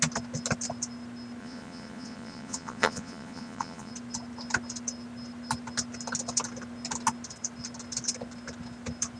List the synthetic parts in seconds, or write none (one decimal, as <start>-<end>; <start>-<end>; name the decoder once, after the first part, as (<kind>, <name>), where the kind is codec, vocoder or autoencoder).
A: 1.4-3.9 (vocoder, Vocos)